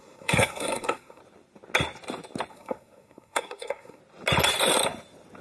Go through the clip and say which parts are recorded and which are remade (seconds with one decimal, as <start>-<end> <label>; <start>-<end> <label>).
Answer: 0.0-1.2 remade; 1.2-2.5 recorded; 2.5-4.0 remade; 4.0-5.4 recorded